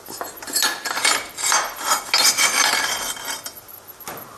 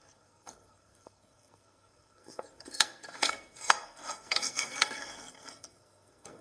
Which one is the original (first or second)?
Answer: first